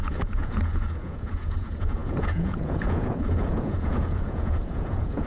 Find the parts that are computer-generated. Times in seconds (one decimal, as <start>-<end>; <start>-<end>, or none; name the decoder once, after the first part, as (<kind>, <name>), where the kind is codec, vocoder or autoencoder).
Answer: 0.0-5.3 (vocoder, Vocos)